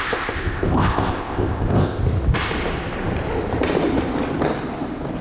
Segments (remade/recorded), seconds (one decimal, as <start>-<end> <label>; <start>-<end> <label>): 0.0-2.0 remade; 2.0-5.2 recorded